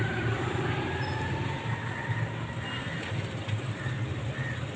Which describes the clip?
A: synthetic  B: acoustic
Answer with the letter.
B